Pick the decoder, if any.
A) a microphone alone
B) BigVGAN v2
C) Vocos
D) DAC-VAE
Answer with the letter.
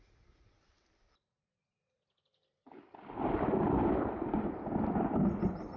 B